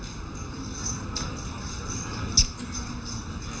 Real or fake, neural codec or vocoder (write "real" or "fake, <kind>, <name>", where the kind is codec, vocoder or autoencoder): real